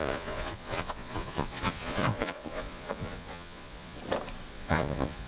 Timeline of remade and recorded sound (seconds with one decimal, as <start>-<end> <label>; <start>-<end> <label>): 0.0-4.0 remade; 4.0-4.5 recorded; 4.5-5.3 remade